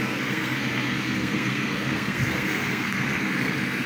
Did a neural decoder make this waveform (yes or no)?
yes